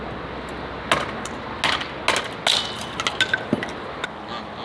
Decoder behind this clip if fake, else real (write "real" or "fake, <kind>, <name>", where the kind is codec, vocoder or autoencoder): real